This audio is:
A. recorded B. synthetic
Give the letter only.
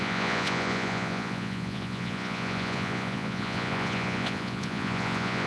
B